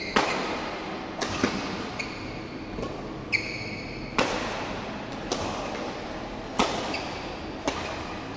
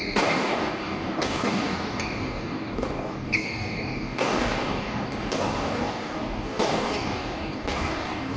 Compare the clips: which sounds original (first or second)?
first